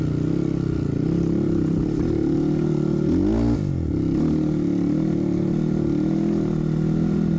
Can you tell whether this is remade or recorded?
recorded